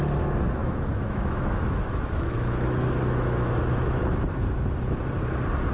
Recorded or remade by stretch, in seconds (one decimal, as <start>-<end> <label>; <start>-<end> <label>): 0.0-0.6 recorded; 0.6-4.0 remade; 4.0-5.7 recorded